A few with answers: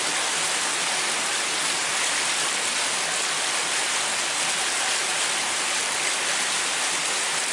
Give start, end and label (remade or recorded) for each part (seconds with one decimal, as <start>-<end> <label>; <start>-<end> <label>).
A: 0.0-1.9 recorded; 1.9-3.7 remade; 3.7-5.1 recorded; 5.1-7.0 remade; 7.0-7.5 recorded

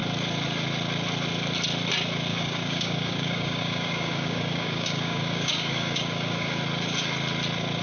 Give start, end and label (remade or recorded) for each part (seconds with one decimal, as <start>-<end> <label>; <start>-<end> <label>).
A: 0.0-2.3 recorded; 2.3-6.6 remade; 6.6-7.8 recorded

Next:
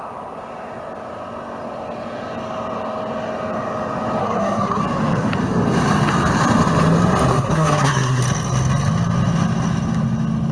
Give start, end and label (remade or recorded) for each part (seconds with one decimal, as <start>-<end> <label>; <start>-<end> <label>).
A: 0.0-4.2 recorded; 4.2-4.8 remade; 4.8-7.3 recorded; 7.3-8.2 remade; 8.2-10.5 recorded